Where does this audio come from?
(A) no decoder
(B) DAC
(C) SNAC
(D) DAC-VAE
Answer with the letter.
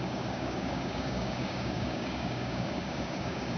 B